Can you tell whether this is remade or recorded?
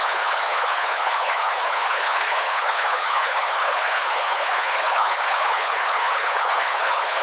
remade